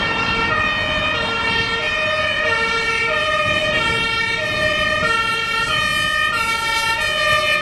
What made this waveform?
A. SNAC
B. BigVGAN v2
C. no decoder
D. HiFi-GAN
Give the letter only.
C